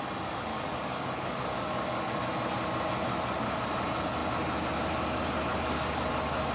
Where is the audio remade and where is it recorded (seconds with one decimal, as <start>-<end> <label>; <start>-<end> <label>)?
0.0-0.5 recorded; 0.5-2.2 remade; 2.2-5.5 recorded; 5.5-6.1 remade; 6.1-6.5 recorded